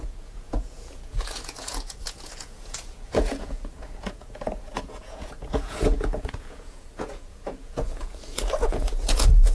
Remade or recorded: remade